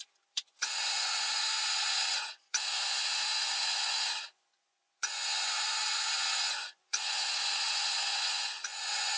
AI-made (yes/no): yes